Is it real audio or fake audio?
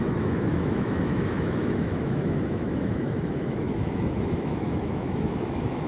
fake